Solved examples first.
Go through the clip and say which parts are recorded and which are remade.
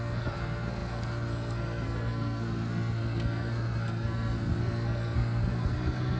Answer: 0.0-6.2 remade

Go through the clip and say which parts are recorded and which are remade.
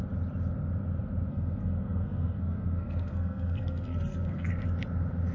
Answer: 0.0-1.3 recorded; 1.3-4.5 remade; 4.5-5.3 recorded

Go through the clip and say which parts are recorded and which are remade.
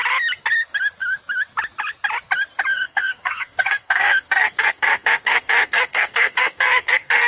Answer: 0.0-2.7 recorded; 2.7-7.3 remade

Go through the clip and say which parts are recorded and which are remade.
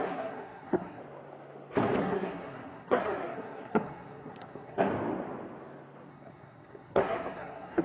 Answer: 0.0-1.0 remade; 1.0-2.0 recorded; 2.0-4.9 remade; 4.9-6.1 recorded; 6.1-7.8 remade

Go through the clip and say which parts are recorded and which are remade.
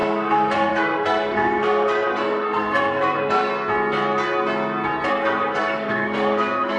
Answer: 0.0-3.5 remade; 3.5-5.1 recorded; 5.1-6.8 remade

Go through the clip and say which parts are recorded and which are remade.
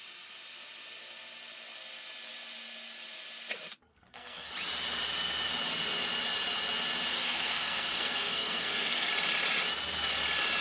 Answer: 0.0-3.9 recorded; 3.9-4.5 remade; 4.5-7.1 recorded; 7.1-9.1 remade; 9.1-10.6 recorded